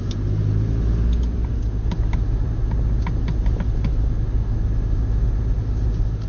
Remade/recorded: recorded